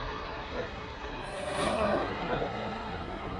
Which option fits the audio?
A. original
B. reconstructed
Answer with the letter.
B